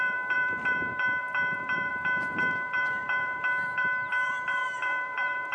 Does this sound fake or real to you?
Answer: fake